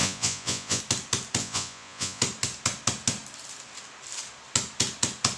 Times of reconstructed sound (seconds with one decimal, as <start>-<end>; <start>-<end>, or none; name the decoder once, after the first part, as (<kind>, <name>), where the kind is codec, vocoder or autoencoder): 0.0-0.8 (vocoder, Vocos); 1.4-2.2